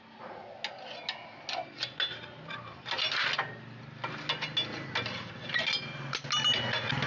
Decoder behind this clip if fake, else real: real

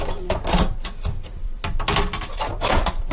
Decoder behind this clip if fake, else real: fake, vocoder, BigVGAN v2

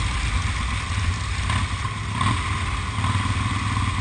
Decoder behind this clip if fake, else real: real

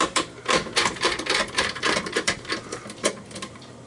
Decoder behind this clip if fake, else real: fake, vocoder, BigVGAN v2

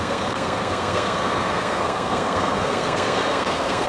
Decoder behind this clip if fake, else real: fake, codec, SNAC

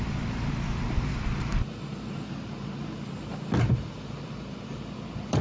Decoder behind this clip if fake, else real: real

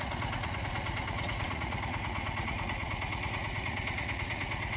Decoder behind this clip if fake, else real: fake, vocoder, Vocos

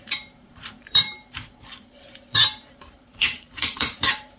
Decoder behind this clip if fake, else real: fake, vocoder, BigVGAN v2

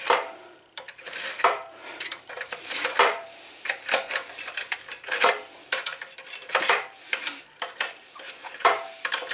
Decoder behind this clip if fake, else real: fake, vocoder, BigVGAN v2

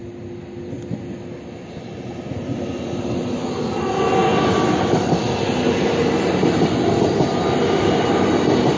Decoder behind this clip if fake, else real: real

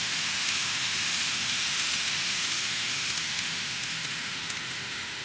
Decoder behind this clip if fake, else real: fake, autoencoder, DAC-VAE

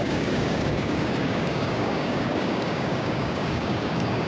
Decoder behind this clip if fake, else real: fake, codec, DAC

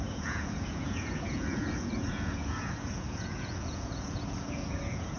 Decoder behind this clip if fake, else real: fake, vocoder, Vocos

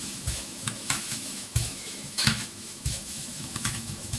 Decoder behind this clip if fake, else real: fake, autoencoder, DAC-VAE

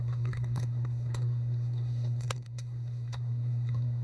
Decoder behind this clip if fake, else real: fake, codec, SNAC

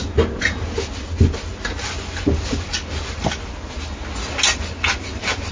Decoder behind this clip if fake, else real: real